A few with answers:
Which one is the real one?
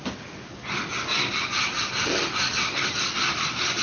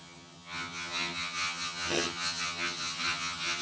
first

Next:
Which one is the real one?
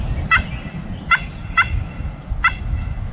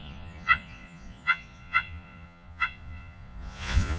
first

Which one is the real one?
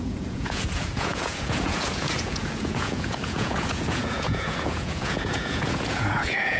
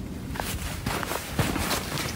second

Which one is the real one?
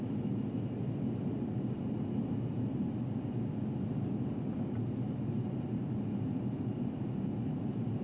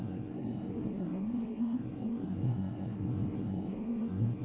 first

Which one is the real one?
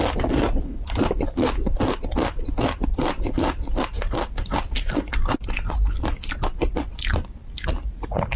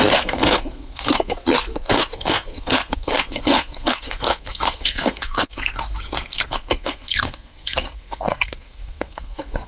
first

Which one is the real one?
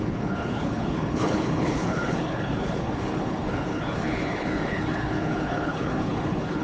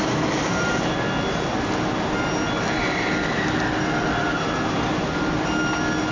second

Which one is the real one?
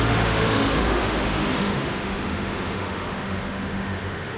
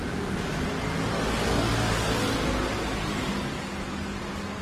second